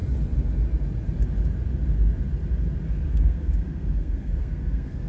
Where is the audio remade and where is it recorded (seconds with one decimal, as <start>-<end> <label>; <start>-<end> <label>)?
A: 0.0-3.1 recorded; 3.1-5.1 remade